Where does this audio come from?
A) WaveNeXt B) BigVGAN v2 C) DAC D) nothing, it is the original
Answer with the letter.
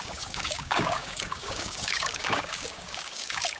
C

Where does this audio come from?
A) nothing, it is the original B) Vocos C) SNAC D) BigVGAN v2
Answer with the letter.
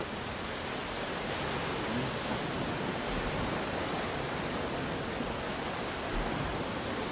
A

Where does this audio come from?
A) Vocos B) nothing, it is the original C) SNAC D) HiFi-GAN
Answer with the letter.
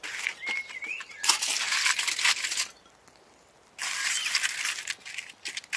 B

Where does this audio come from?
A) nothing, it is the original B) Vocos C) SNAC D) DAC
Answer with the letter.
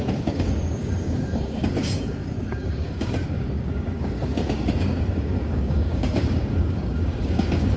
D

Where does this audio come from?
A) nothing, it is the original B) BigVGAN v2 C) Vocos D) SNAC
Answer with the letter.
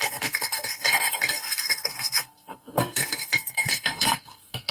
D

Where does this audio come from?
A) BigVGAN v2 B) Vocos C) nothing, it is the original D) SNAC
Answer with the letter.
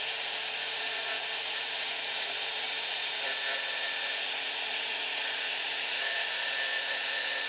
B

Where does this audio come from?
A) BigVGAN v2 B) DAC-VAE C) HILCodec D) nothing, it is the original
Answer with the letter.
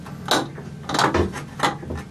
D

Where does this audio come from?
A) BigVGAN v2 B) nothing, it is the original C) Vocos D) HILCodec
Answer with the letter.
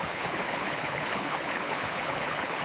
D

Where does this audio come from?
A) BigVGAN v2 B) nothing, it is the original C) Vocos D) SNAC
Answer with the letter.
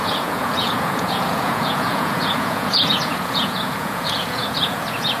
C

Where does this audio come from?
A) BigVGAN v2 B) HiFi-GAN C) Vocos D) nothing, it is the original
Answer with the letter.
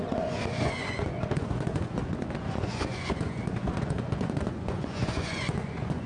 C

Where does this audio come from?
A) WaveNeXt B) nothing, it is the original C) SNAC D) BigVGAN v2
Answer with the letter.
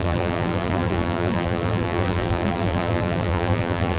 D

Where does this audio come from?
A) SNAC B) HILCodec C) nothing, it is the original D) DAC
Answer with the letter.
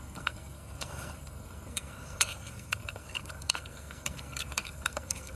A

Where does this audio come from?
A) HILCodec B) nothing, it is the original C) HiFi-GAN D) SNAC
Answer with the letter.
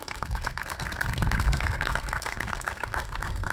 D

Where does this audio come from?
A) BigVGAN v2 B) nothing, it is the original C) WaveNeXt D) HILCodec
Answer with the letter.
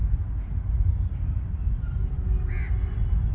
B